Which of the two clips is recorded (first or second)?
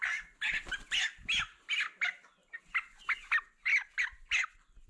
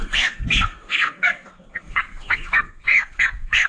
first